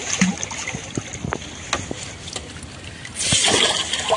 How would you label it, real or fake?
real